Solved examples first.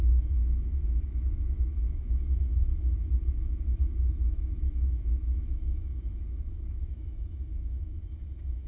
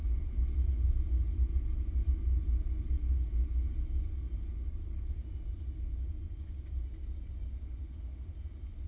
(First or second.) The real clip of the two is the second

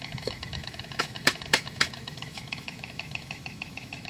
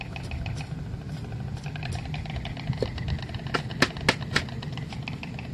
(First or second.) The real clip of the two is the second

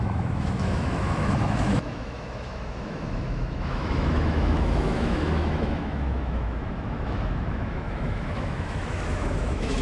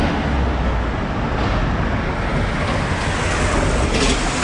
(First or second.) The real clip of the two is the second